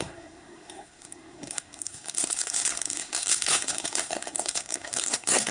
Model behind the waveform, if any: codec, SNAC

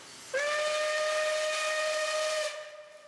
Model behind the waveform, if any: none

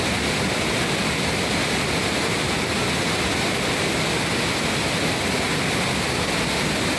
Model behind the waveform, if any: none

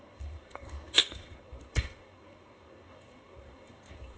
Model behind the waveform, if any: codec, SNAC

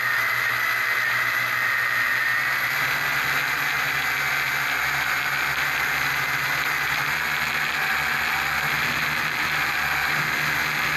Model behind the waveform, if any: none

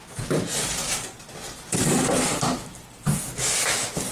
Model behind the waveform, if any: none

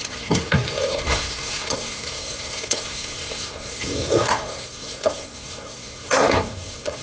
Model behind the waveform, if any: codec, SNAC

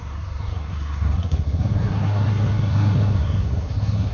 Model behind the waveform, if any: codec, SNAC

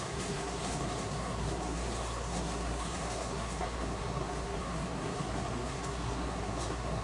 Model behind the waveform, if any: codec, SNAC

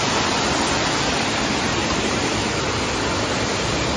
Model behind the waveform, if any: none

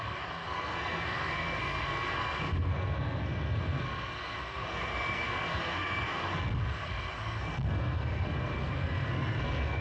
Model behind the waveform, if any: codec, SNAC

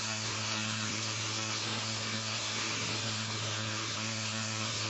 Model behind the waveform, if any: codec, SNAC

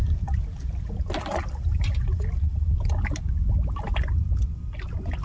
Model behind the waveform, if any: none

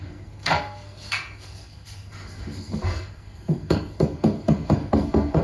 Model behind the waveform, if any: codec, SNAC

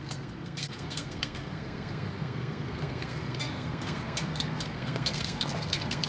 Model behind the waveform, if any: codec, SNAC